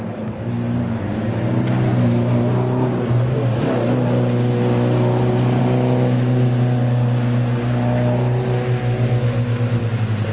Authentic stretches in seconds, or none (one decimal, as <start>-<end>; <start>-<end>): 0.0-10.3